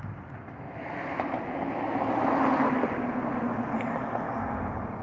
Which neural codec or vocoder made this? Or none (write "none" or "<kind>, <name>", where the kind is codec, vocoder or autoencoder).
none